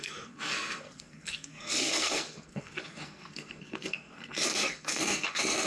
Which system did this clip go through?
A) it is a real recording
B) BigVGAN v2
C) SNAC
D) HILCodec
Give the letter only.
C